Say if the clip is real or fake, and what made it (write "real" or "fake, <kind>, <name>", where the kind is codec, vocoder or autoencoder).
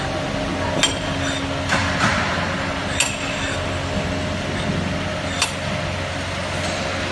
real